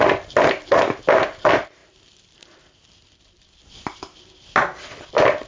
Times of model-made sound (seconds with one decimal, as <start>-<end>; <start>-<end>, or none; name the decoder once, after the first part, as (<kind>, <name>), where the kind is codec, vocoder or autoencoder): none